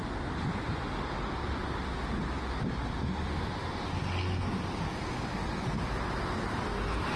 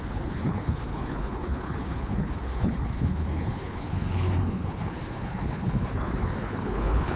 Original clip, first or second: first